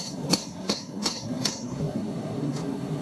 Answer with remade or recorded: remade